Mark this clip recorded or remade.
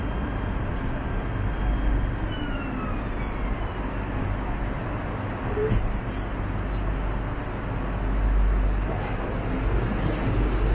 recorded